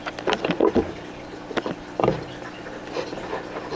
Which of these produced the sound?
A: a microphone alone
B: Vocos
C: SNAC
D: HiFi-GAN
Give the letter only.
A